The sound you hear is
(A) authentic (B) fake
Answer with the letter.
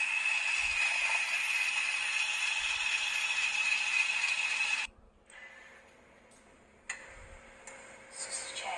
A